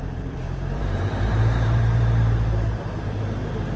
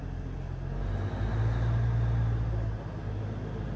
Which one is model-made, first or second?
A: first